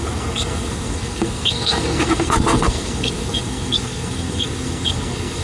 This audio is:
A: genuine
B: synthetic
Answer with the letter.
B